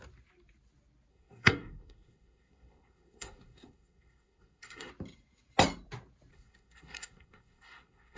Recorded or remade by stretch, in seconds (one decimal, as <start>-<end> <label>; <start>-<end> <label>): 0.0-1.1 recorded; 1.1-4.9 remade; 4.9-6.3 recorded; 6.3-8.2 remade